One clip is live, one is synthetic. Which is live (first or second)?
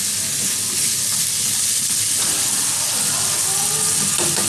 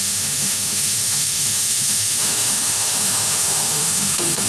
first